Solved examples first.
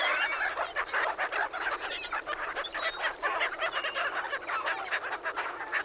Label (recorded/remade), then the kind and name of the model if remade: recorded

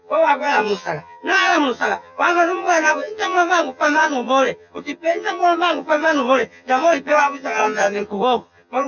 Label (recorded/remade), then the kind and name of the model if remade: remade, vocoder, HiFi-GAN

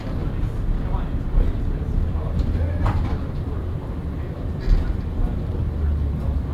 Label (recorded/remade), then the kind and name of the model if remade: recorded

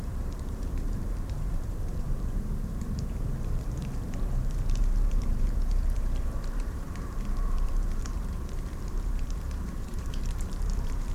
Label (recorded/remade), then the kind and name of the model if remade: remade, vocoder, BigVGAN v2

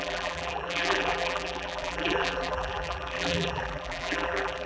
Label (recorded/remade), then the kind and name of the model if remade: remade, vocoder, BigVGAN v2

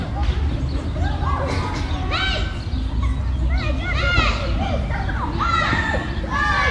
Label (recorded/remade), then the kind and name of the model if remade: recorded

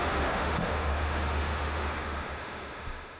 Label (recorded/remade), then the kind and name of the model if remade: remade, autoencoder, DAC-VAE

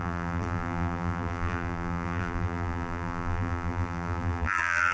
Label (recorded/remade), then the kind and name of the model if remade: remade, vocoder, BigVGAN v2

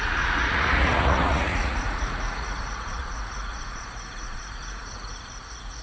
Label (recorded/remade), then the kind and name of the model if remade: remade, vocoder, Vocos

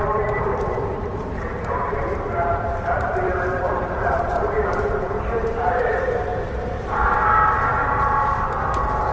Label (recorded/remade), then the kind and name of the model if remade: remade, vocoder, BigVGAN v2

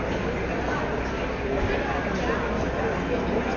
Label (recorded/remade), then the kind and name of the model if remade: recorded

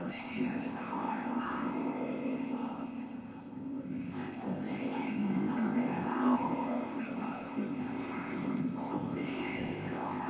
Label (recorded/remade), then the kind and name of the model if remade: remade, codec, ZipCodec